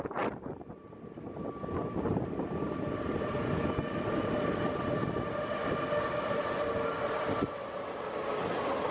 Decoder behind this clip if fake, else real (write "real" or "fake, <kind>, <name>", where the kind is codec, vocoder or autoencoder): real